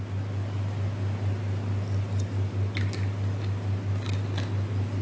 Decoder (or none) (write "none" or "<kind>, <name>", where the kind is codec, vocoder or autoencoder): none